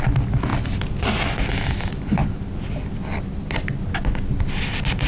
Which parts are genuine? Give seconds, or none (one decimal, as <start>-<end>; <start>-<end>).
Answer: 0.0-5.1